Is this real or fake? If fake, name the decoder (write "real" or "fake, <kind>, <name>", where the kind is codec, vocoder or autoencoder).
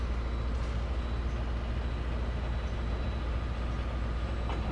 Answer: real